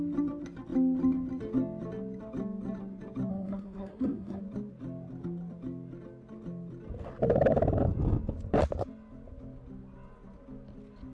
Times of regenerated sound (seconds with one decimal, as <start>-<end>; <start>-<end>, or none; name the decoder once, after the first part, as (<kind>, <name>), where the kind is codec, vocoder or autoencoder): 3.3-4.4 (codec, SNAC)